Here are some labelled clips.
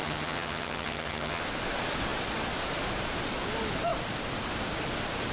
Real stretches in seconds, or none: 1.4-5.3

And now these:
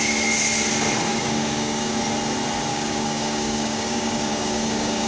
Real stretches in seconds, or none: 0.0-1.1; 2.0-2.7

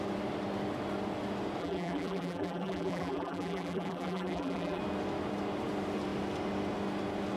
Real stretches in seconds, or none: 0.0-1.6; 4.8-7.4

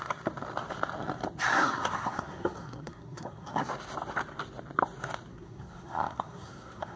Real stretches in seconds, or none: 0.0-1.5; 3.7-5.3

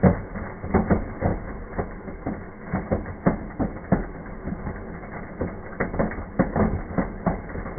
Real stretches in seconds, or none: 0.0-7.8

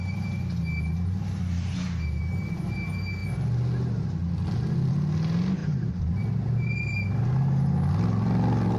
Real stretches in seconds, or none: 0.0-5.6; 7.1-8.8